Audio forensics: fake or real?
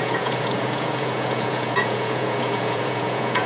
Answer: fake